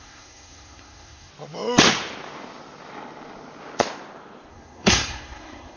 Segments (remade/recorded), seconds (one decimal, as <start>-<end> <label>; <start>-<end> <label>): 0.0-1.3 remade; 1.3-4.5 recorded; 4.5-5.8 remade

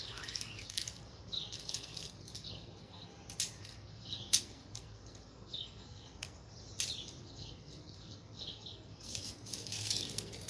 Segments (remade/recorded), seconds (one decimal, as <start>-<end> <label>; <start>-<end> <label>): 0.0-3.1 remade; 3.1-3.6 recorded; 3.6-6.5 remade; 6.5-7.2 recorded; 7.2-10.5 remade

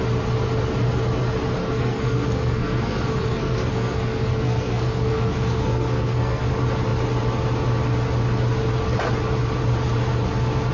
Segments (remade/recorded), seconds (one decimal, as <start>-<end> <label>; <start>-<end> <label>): 0.0-1.6 recorded; 1.6-6.5 remade; 6.5-10.7 recorded

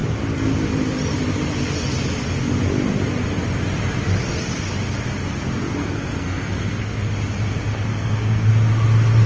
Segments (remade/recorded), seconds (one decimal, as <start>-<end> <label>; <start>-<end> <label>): 0.0-5.8 recorded; 5.8-7.1 remade; 7.1-7.9 recorded; 7.9-8.5 remade; 8.5-9.3 recorded

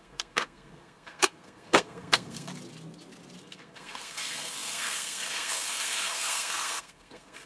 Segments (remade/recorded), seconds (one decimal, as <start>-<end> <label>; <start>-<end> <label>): 0.0-2.5 remade; 2.5-3.4 recorded; 3.4-7.5 remade